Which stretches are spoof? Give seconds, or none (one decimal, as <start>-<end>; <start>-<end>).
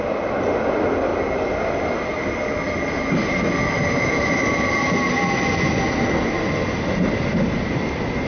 none